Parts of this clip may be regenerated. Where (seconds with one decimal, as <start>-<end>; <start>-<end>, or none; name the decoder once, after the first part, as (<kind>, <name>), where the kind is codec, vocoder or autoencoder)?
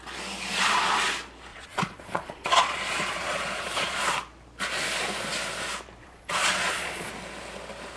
1.5-4.0 (vocoder, Vocos); 6.0-7.1